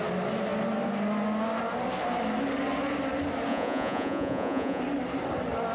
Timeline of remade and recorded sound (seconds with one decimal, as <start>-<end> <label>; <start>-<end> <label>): 0.0-3.5 recorded; 3.5-4.8 remade; 4.8-5.7 recorded